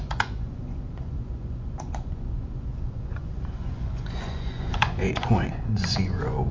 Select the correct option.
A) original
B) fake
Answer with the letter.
B